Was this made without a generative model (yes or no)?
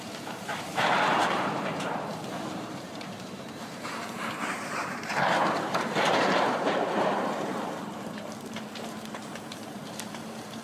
no